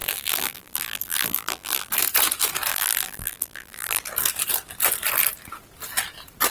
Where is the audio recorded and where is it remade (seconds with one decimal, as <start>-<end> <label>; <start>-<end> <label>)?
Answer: 0.0-1.9 remade; 1.9-2.7 recorded; 2.7-4.0 remade; 4.0-6.5 recorded